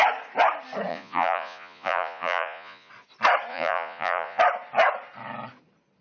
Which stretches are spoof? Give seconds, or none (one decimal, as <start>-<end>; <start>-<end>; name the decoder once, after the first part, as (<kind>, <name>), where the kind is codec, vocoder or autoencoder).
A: 0.9-2.9 (vocoder, Vocos); 3.5-4.4